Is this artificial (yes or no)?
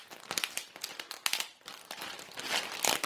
no